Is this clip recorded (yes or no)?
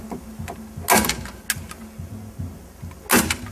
yes